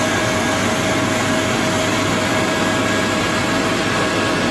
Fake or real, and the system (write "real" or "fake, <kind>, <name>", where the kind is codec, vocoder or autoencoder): real